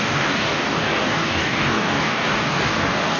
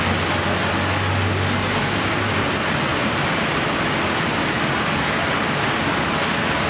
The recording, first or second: second